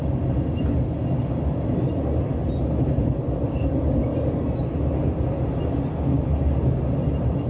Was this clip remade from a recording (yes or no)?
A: no